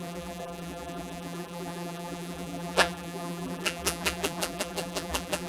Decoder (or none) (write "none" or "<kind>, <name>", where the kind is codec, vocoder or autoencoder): vocoder, BigVGAN v2